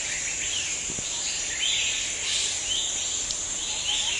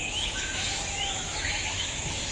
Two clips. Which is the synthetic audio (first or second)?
second